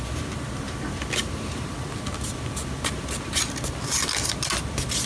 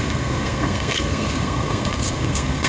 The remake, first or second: second